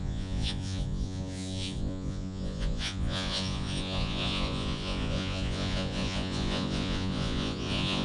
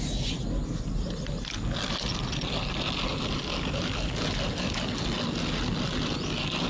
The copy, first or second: first